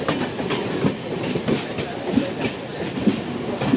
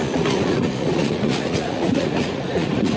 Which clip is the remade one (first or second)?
second